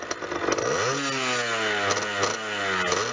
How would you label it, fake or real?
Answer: real